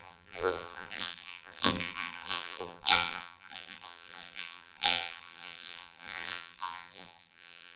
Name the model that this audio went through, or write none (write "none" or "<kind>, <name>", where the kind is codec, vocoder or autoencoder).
vocoder, BigVGAN v2